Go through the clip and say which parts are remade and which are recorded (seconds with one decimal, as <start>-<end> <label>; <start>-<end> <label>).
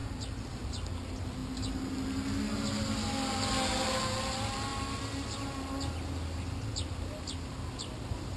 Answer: 0.0-8.4 recorded